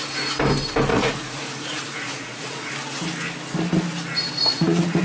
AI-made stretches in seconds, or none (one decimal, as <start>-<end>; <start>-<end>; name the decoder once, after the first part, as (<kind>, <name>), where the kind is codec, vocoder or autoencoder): 0.9-2.7 (vocoder, Vocos); 4.4-5.0